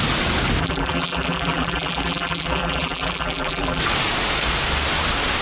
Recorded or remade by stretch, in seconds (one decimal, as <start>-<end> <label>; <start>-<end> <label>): 0.0-0.6 recorded; 0.6-3.8 remade; 3.8-5.4 recorded